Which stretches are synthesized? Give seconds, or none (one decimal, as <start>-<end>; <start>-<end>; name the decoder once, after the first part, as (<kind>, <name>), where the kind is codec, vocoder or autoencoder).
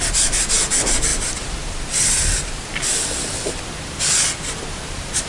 1.1-3.6 (vocoder, BigVGAN v2)